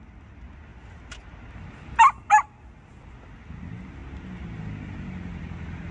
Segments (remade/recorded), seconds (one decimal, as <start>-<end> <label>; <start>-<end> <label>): 0.0-5.9 recorded